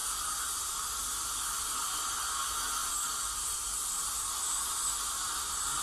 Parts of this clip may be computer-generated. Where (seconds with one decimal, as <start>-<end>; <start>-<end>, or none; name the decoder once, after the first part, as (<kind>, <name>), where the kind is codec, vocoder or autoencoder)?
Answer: none